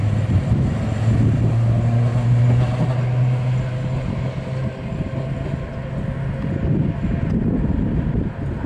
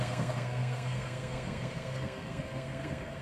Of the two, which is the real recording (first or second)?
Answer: first